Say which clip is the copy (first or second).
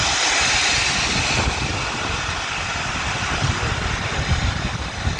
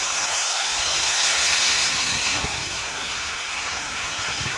second